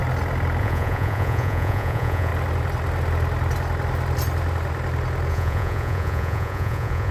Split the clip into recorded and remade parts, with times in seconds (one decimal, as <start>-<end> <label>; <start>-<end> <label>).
0.0-0.6 recorded; 0.6-2.3 remade; 2.3-5.3 recorded; 5.3-7.1 remade